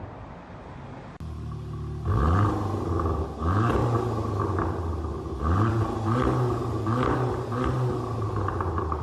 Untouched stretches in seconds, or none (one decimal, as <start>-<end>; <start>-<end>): 0.0-9.0